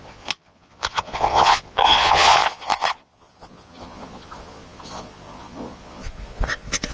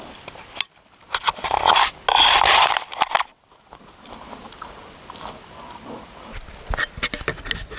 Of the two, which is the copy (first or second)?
first